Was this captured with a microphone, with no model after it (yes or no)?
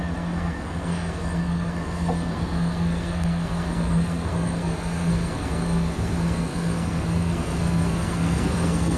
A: no